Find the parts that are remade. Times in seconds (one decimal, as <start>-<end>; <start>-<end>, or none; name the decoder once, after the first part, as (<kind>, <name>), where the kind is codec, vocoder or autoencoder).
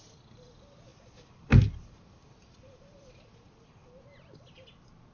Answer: 0.9-4.0 (vocoder, BigVGAN v2)